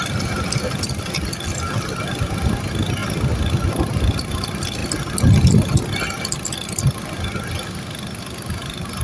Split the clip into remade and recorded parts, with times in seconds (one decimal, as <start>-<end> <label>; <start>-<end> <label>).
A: 0.0-9.0 recorded